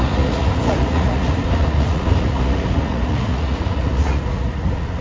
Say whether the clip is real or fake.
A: fake